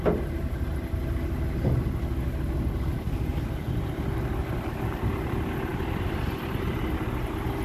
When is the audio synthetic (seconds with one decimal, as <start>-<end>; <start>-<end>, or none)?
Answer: none